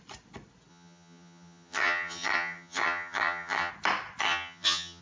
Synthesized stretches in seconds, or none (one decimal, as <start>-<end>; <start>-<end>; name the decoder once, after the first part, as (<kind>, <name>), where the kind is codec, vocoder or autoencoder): 0.7-3.7 (vocoder, HiFi-GAN); 4.2-5.0